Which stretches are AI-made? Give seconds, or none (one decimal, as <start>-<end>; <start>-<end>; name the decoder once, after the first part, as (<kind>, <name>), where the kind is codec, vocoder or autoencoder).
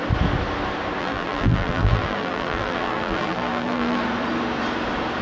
1.0-4.0 (vocoder, BigVGAN v2)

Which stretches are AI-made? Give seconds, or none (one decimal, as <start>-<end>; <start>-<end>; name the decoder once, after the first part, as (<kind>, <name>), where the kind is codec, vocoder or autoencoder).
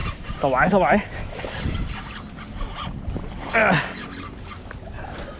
none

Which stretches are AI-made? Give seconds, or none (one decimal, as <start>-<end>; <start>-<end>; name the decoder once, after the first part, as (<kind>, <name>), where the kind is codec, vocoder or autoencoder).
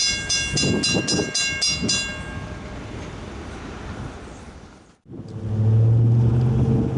none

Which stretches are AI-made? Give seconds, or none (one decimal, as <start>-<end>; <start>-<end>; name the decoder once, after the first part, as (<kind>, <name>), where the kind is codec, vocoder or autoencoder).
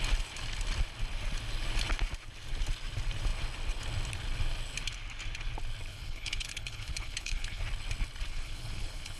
5.9-7.6 (codec, HILCodec); 8.3-9.2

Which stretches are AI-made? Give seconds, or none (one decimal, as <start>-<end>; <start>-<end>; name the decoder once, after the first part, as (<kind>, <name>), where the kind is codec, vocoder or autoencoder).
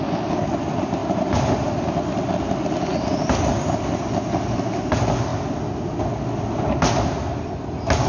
1.0-1.5 (vocoder, BigVGAN v2); 6.4-7.2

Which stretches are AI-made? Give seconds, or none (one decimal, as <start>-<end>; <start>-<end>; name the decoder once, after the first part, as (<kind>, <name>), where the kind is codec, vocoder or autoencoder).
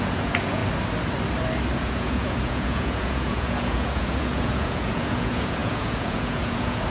0.0-0.6 (vocoder, Vocos); 1.8-6.9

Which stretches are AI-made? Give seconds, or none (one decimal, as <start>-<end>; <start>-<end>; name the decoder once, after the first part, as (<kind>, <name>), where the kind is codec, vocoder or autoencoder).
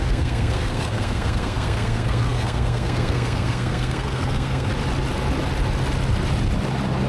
0.0-4.7 (codec, SNAC)